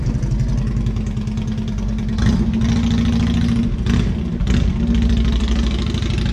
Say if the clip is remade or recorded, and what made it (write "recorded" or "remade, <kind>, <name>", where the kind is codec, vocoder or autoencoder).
recorded